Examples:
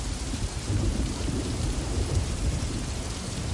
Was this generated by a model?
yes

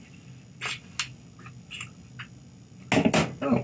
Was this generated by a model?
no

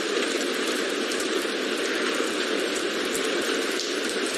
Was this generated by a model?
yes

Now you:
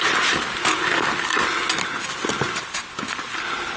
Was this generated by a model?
no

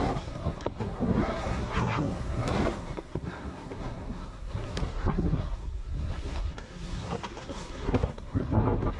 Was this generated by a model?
yes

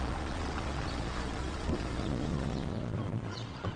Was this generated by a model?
yes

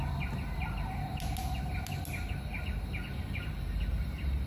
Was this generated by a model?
no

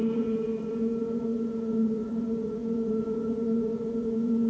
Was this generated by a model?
yes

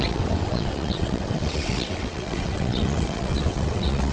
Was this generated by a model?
yes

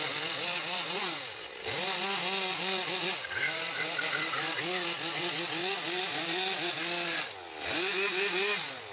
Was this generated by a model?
no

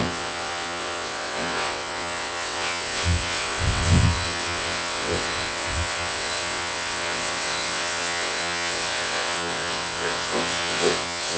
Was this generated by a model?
yes